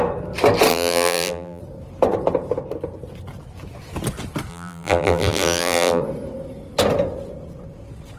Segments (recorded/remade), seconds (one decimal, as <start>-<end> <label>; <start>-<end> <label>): 0.0-0.7 recorded; 0.7-1.6 remade; 1.6-4.5 recorded; 4.5-6.0 remade; 6.0-8.2 recorded